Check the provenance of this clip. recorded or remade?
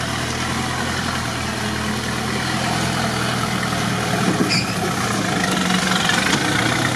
recorded